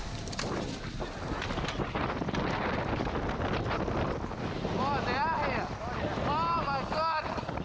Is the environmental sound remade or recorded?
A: recorded